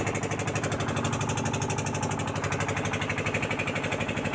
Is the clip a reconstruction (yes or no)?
no